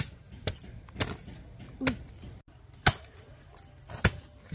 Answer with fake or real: real